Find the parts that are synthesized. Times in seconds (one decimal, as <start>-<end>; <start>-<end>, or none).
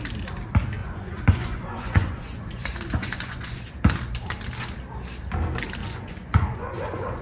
0.8-3.8; 5.8-7.2